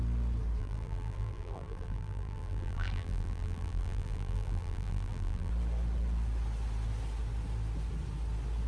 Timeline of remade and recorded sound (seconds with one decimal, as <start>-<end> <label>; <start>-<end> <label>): 0.0-0.6 recorded; 0.6-5.5 remade; 5.5-8.7 recorded